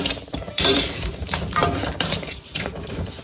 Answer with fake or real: fake